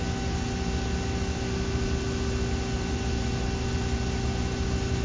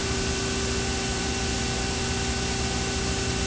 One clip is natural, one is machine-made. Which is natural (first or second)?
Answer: first